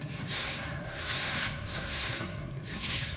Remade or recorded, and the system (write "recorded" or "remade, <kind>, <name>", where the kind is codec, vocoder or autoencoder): remade, codec, SNAC